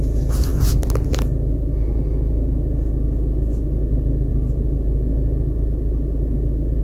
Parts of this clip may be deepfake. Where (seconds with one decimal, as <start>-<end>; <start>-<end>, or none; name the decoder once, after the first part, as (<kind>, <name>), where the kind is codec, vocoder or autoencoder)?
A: none